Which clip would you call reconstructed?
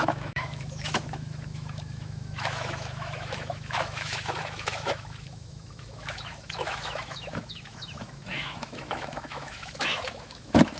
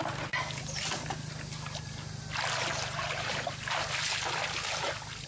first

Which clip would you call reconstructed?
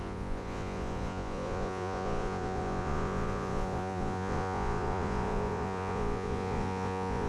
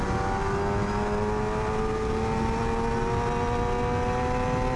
first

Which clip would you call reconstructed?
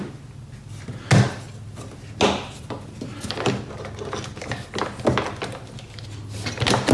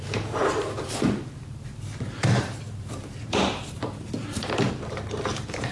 second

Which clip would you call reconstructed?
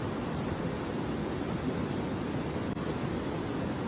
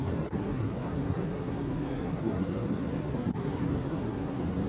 second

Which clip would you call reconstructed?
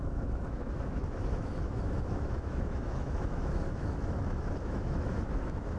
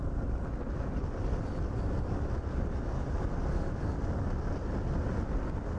first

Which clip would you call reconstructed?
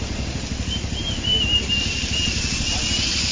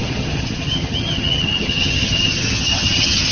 second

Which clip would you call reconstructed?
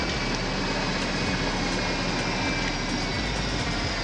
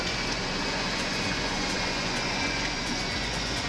second